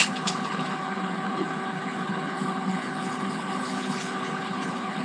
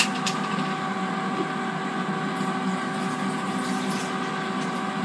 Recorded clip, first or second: second